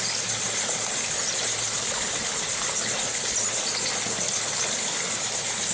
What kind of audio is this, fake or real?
real